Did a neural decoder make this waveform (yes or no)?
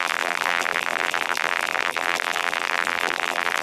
yes